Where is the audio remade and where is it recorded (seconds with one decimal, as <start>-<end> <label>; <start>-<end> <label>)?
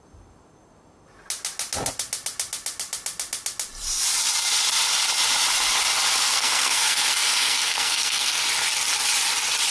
0.0-6.2 recorded; 6.2-8.4 remade; 8.4-9.7 recorded